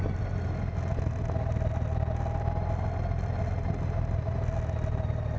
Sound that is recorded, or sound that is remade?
recorded